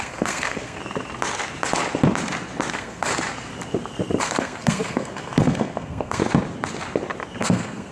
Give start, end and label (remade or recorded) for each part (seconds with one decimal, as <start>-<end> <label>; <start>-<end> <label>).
0.0-0.8 remade; 0.8-2.7 recorded; 2.7-3.1 remade; 3.1-4.2 recorded; 4.2-6.2 remade; 6.2-7.4 recorded; 7.4-7.9 remade